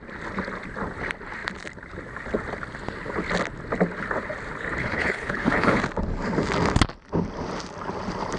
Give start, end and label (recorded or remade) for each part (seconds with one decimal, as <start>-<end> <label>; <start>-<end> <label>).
0.0-4.8 recorded; 4.8-5.8 remade; 5.8-8.4 recorded